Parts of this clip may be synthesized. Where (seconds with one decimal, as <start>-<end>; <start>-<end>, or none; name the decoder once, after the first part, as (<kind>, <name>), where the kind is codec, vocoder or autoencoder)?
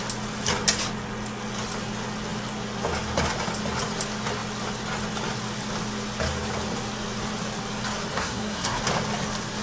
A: 8.1-8.8 (codec, SNAC)